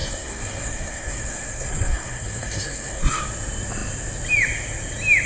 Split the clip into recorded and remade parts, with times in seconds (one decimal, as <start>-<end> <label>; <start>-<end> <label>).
0.0-3.2 remade; 3.2-5.3 recorded